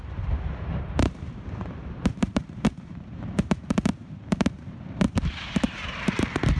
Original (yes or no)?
no